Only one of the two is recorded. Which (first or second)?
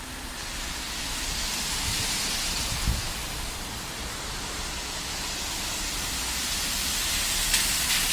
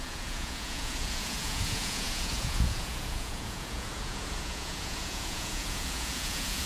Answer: first